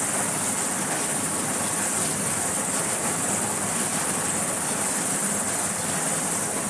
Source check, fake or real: real